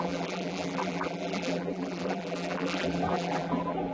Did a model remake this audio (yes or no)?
yes